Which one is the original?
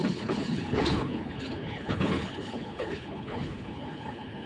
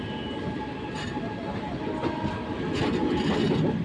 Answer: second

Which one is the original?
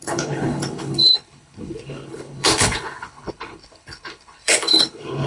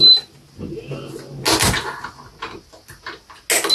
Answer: second